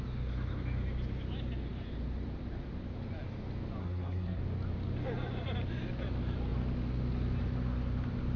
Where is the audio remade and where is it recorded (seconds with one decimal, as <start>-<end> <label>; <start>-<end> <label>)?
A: 0.0-3.8 recorded; 3.8-4.4 remade; 4.4-8.4 recorded